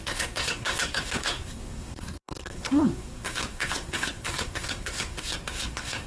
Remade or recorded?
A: remade